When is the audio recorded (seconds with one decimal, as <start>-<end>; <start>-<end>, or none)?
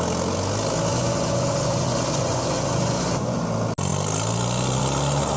0.0-0.9; 3.4-5.4